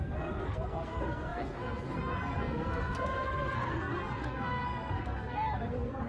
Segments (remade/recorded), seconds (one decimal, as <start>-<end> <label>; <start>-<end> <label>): 0.0-6.1 remade

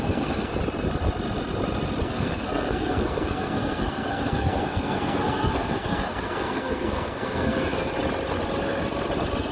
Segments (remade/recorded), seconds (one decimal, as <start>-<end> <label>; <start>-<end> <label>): 0.0-0.5 remade; 0.5-2.0 recorded; 2.0-7.9 remade; 7.9-9.5 recorded

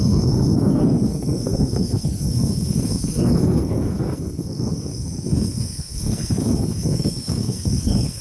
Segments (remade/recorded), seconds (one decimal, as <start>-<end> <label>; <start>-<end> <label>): 0.0-8.2 remade

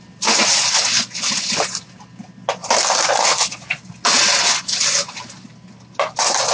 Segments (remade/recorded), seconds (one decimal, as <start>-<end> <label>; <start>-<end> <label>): 0.0-6.5 recorded